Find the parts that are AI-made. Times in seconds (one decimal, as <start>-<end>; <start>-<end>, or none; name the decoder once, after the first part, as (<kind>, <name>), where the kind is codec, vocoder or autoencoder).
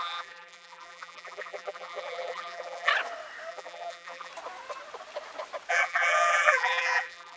0.0-2.9 (vocoder, BigVGAN v2); 3.5-4.3; 5.7-7.4